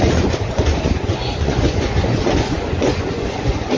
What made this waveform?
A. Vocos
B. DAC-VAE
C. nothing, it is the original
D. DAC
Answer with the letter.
A